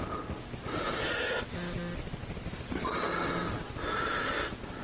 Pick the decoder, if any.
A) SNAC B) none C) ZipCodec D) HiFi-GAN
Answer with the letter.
B